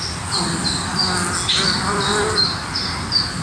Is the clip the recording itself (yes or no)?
yes